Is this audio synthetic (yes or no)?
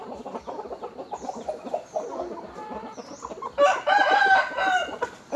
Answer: no